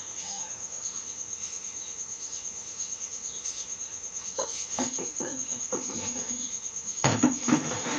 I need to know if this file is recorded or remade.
remade